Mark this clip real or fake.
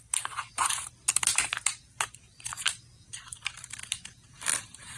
fake